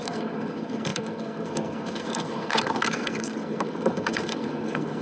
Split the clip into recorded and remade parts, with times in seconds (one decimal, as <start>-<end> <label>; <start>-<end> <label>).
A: 0.0-5.0 remade